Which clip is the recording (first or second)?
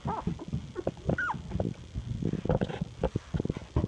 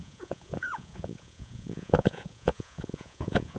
first